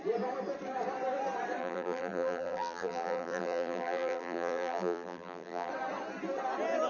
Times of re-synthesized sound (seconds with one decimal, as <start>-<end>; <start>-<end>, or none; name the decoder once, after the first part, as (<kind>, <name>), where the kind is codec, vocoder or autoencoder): 1.6-5.7 (vocoder, BigVGAN v2)